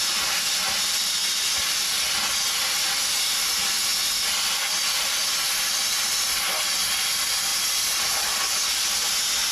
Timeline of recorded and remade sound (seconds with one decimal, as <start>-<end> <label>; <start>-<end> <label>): 0.0-9.5 recorded